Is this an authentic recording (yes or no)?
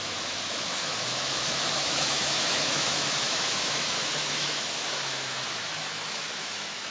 no